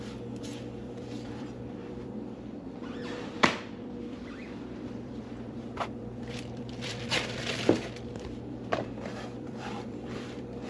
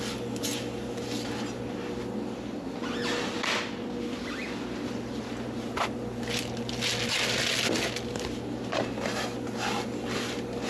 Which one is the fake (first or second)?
first